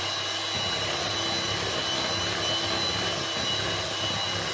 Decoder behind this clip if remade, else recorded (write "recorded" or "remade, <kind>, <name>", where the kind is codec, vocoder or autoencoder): recorded